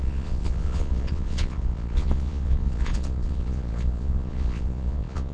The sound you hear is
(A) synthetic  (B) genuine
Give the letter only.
A